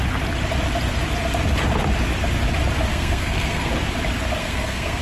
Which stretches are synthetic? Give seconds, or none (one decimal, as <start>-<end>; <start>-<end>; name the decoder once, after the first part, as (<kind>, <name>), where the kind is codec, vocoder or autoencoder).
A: 2.9-3.7 (codec, SNAC); 4.4-5.0